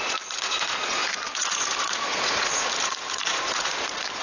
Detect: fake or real fake